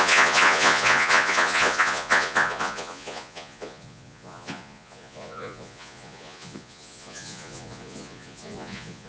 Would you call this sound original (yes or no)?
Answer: no